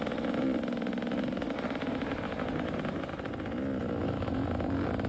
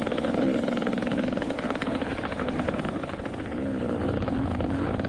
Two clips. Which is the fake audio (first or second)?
second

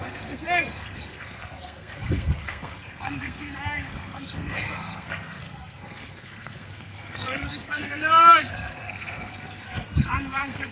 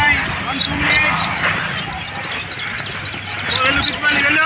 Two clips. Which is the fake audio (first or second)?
first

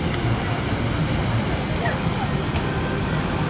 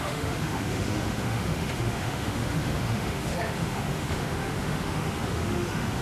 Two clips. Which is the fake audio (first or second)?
second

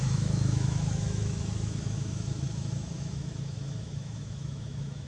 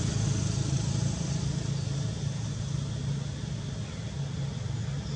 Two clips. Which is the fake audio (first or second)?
first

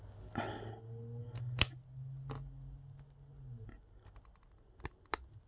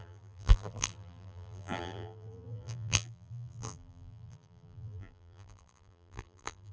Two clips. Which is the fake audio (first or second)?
second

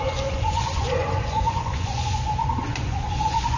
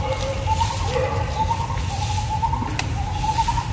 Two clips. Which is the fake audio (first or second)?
first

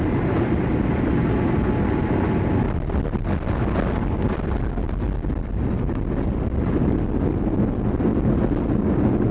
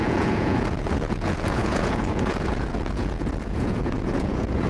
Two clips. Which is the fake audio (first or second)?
second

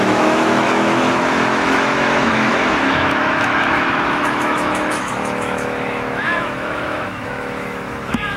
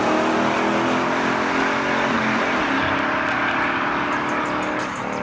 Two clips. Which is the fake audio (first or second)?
first